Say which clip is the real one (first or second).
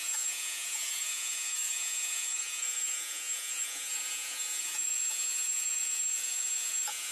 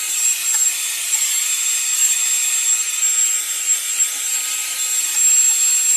second